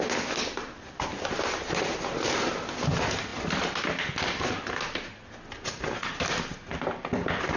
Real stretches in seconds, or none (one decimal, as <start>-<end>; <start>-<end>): 0.0-7.6